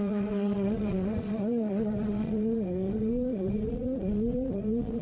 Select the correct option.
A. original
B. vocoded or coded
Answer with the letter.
B